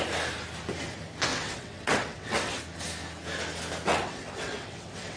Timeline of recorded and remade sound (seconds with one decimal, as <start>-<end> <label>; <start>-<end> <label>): 0.0-1.3 recorded; 1.3-2.6 remade; 2.6-3.9 recorded; 3.9-5.2 remade

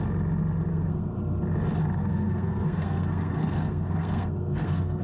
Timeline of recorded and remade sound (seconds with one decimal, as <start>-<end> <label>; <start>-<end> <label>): 0.0-0.7 recorded; 0.7-1.2 remade; 1.2-2.0 recorded; 2.0-5.0 remade

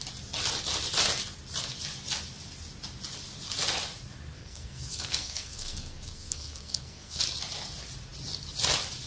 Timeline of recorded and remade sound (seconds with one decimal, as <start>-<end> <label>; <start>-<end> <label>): 0.0-4.4 recorded; 4.4-7.2 remade; 7.2-9.1 recorded

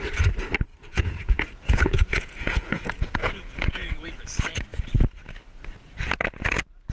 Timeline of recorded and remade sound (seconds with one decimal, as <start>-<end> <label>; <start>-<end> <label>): 0.0-0.7 recorded; 0.7-4.1 remade; 4.1-6.9 recorded

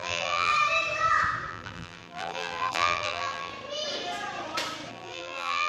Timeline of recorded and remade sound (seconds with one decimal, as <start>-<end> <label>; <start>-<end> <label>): 0.0-0.5 remade; 0.5-1.5 recorded; 1.5-3.5 remade; 3.5-4.9 recorded; 4.9-5.7 remade

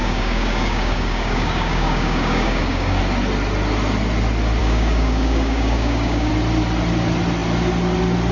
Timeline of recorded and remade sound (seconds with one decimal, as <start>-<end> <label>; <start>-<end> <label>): 0.0-3.0 remade; 3.0-4.6 recorded; 4.6-6.3 remade; 6.3-8.3 recorded

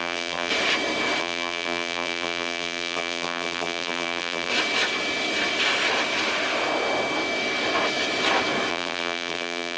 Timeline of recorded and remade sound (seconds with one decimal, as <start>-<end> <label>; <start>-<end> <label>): 0.0-0.5 remade; 0.5-1.2 recorded; 1.2-4.5 remade; 4.5-8.7 recorded; 8.7-9.8 remade

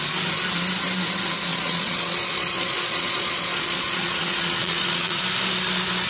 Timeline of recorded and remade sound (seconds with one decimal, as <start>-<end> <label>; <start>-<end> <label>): 0.0-1.5 recorded; 1.5-5.2 remade; 5.2-6.1 recorded